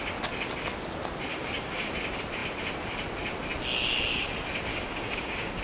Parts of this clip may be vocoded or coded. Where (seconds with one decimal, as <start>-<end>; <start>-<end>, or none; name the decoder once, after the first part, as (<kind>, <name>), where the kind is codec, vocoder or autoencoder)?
1.3-1.9 (codec, DAC); 4.7-5.6